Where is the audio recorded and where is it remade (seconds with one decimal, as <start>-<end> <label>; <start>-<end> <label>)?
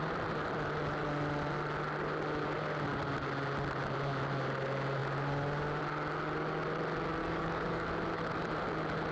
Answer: 0.0-7.2 recorded; 7.2-7.9 remade; 7.9-9.1 recorded